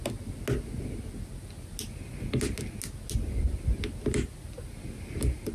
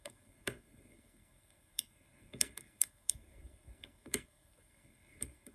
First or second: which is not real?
second